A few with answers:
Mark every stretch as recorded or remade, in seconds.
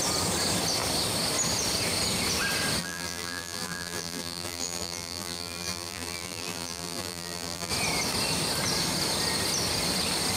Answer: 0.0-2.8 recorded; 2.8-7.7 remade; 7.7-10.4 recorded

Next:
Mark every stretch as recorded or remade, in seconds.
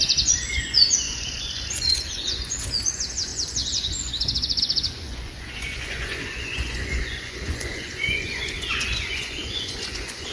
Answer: 0.0-10.3 remade